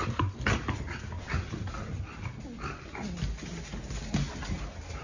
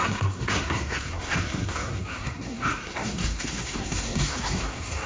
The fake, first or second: second